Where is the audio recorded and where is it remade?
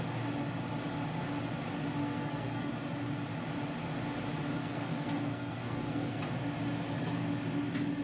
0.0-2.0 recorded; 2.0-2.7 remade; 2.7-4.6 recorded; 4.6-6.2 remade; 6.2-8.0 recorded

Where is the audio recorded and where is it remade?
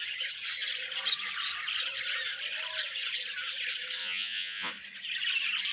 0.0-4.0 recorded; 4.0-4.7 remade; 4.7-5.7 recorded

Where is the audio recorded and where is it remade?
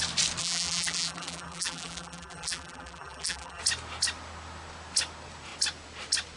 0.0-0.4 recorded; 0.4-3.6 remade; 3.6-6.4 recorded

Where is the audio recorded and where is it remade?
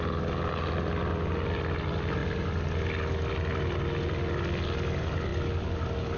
0.0-6.2 recorded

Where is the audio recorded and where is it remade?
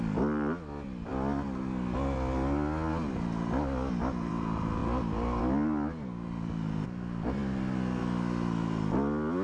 0.0-9.4 recorded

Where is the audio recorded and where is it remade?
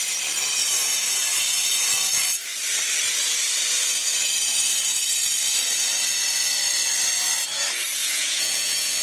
0.0-8.0 recorded; 8.0-9.0 remade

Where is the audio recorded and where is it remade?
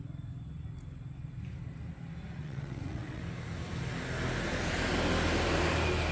0.0-2.4 recorded; 2.4-3.2 remade; 3.2-6.1 recorded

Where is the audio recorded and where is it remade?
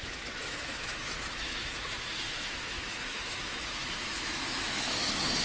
0.0-5.4 remade